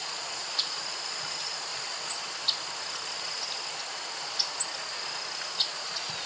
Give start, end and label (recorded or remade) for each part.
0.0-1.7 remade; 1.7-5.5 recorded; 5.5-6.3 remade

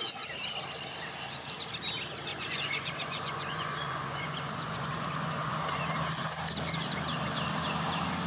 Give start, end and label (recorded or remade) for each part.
0.0-2.3 recorded; 2.3-5.8 remade; 5.8-8.3 recorded